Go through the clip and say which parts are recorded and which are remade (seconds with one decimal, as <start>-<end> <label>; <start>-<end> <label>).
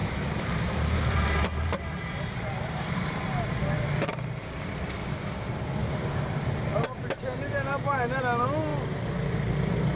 0.0-4.7 remade; 4.7-5.8 recorded; 5.8-8.2 remade; 8.2-10.0 recorded